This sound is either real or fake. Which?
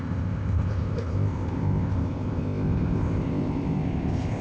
fake